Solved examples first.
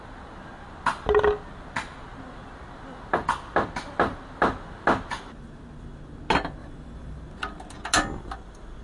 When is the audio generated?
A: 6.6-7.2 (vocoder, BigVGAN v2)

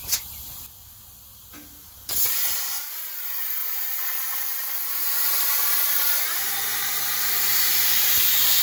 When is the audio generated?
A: 1.5-3.6 (vocoder, BigVGAN v2); 4.7-5.6; 7.2-8.6